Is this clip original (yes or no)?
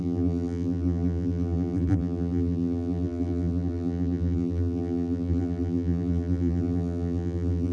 no